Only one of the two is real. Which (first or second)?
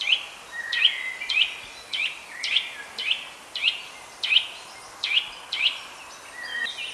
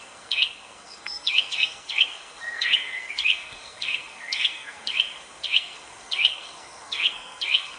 first